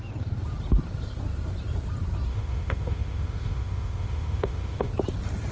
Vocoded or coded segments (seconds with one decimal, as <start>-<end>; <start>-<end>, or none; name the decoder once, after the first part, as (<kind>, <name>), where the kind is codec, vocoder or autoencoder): 2.3-4.9 (autoencoder, DAC-VAE)